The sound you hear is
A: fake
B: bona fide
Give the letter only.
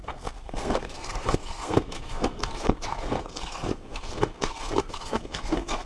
A